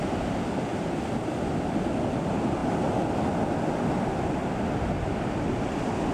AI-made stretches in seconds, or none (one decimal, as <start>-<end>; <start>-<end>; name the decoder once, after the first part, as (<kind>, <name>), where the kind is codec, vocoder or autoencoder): none